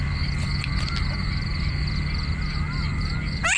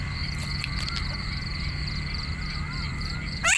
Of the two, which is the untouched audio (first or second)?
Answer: first